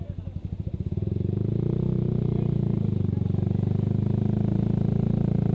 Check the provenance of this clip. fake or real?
real